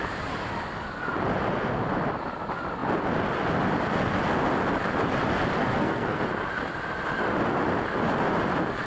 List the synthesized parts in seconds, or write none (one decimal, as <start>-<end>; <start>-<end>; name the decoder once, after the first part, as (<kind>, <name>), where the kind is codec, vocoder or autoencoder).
5.6-6.2 (codec, SNAC)